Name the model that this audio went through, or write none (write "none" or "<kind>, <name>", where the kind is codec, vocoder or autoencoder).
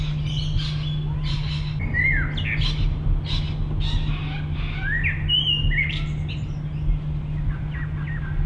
none